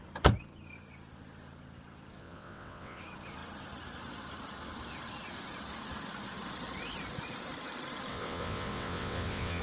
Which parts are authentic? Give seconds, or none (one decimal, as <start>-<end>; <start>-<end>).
0.0-2.2; 3.0-8.1